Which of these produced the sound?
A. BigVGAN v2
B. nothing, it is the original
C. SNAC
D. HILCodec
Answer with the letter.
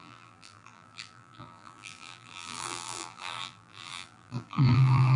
A